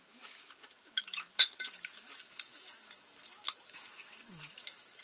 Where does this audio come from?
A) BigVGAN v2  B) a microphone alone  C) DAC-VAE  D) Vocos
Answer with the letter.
C